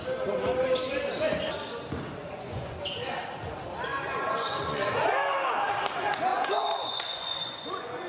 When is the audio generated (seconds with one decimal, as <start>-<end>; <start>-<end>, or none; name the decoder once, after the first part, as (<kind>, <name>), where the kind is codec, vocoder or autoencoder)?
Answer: 2.2-2.8 (vocoder, Vocos); 3.9-4.9; 6.3-8.1